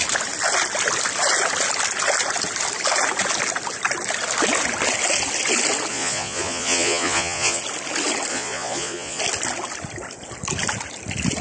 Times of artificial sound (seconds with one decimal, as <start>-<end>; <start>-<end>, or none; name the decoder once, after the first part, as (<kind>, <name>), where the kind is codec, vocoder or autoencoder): 5.9-7.6 (vocoder, Vocos); 8.3-9.2